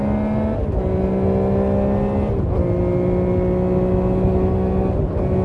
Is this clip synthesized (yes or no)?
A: no